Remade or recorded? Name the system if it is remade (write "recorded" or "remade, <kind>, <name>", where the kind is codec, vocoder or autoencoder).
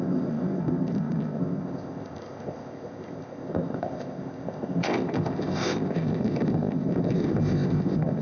remade, codec, ZipCodec